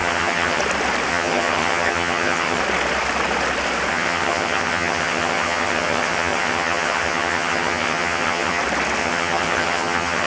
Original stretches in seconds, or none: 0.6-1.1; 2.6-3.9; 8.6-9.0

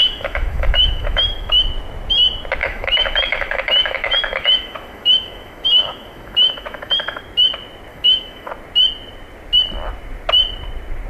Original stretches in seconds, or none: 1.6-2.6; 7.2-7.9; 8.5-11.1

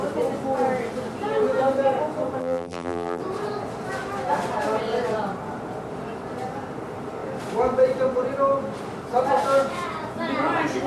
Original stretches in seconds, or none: 0.0-2.4; 3.2-10.9

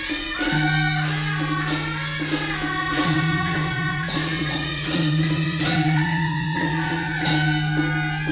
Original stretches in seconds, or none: 0.0-2.8; 7.3-8.3

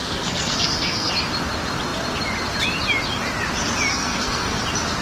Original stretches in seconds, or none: 1.1-3.9; 4.6-5.0

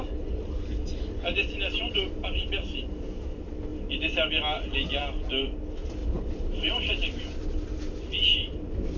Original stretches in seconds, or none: 0.0-6.0; 7.2-9.0